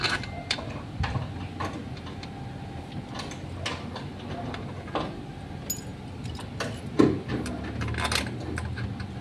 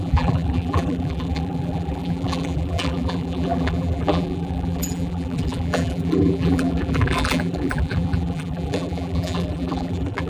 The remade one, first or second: second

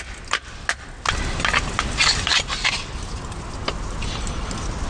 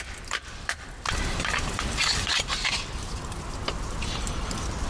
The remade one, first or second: second